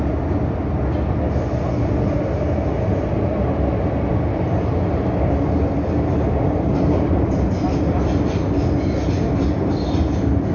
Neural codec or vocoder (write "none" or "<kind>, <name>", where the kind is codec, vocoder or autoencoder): none